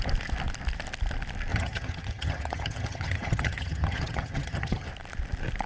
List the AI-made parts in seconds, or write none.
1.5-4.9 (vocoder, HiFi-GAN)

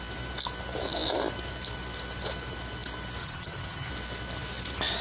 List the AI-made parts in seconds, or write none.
3.2-3.9 (vocoder, HiFi-GAN)

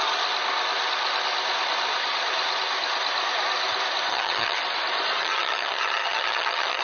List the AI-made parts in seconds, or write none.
4.1-4.6 (vocoder, HiFi-GAN); 5.2-6.8

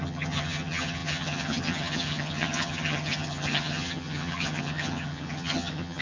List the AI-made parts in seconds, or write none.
0.0-6.0 (vocoder, HiFi-GAN)